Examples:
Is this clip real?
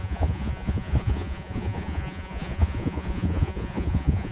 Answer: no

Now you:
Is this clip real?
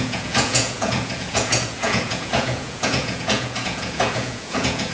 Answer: no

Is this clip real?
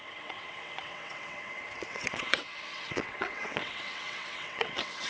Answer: no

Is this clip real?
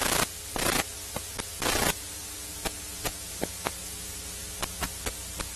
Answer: yes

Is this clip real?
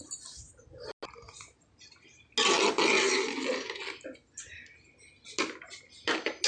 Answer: yes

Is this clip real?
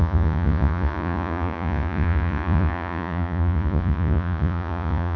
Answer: no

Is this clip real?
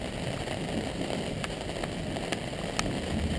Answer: yes